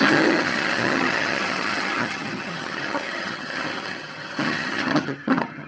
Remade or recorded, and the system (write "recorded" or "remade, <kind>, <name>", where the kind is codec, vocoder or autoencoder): remade, vocoder, HiFi-GAN